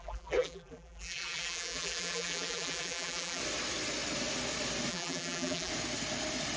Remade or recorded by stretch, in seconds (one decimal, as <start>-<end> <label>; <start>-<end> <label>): 0.0-3.4 remade; 3.4-4.9 recorded; 4.9-5.7 remade; 5.7-6.6 recorded